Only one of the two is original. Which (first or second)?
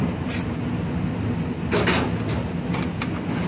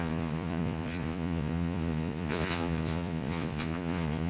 first